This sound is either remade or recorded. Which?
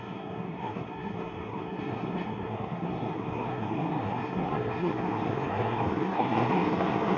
remade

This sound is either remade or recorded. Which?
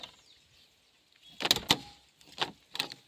recorded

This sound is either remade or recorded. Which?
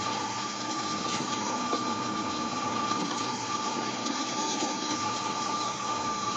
remade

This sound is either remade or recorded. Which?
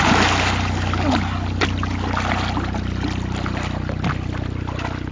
recorded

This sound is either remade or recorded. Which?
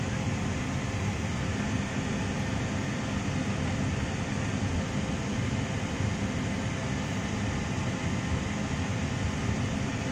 recorded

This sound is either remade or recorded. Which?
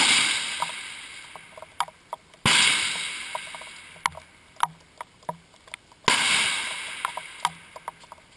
recorded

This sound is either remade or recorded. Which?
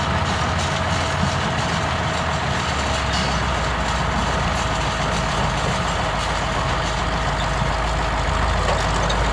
recorded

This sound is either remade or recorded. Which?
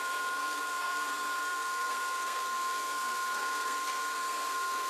remade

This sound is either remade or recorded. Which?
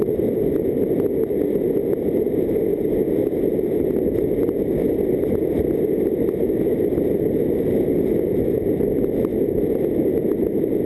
recorded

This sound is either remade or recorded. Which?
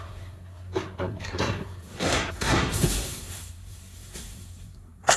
remade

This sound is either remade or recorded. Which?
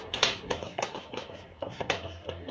remade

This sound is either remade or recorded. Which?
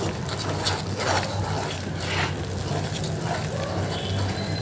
recorded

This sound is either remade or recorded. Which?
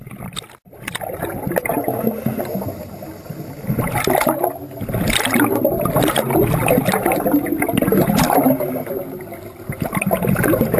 recorded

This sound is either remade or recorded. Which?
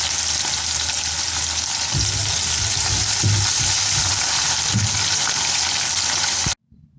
recorded